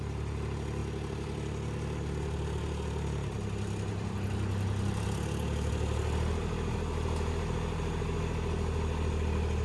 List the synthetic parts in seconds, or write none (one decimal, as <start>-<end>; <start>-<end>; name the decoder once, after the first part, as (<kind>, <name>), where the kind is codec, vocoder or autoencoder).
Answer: none